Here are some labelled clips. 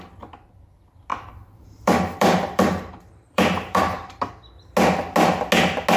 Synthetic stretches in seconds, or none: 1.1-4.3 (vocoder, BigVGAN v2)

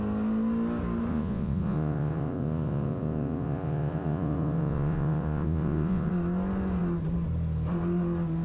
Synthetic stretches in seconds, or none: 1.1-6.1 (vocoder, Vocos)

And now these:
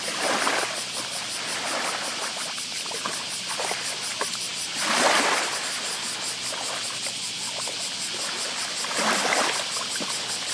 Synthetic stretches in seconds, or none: none